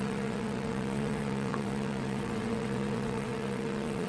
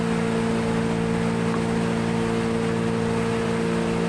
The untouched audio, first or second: second